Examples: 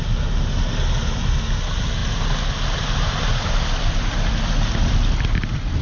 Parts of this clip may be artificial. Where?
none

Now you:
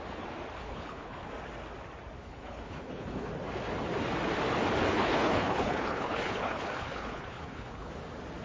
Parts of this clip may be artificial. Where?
0.6-1.3; 2.2-3.3; 4.9-7.9

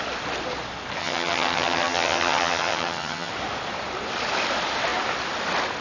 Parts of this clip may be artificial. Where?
1.0-3.3

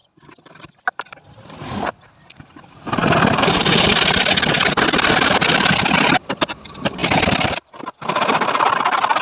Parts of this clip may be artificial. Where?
none